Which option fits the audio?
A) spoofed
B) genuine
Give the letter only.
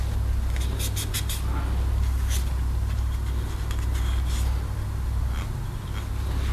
B